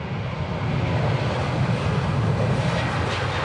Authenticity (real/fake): real